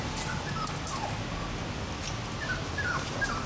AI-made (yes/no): no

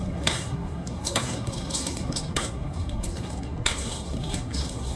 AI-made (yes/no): yes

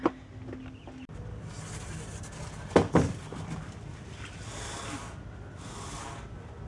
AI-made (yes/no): no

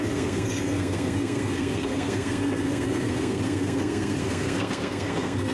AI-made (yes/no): yes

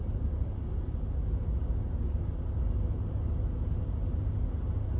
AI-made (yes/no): no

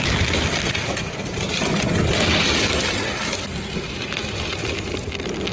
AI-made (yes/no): no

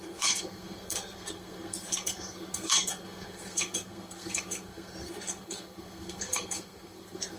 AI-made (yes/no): yes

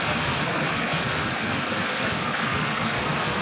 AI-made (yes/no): yes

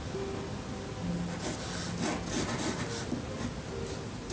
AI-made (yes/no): no